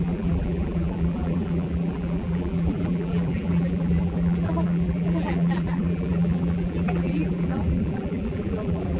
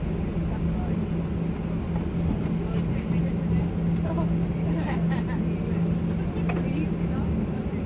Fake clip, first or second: first